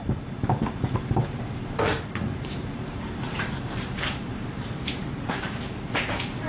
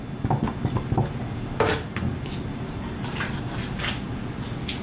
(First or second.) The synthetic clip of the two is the first